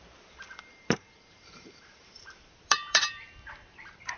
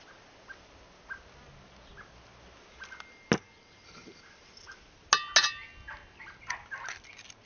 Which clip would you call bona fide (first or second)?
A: second